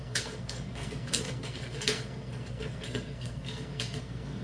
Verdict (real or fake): fake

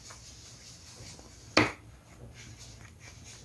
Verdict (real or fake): real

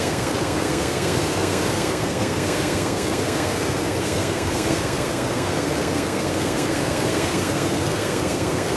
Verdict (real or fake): fake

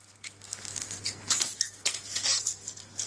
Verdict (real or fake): fake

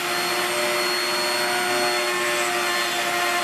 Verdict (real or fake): real